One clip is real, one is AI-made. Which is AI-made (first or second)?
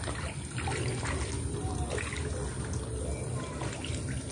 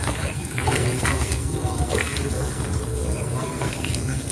second